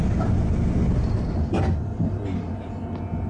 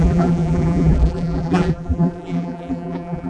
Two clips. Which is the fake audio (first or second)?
second